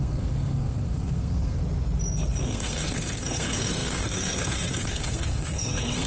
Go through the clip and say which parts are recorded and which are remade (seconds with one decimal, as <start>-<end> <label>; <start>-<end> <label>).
0.0-1.6 remade; 1.6-2.4 recorded; 2.4-6.1 remade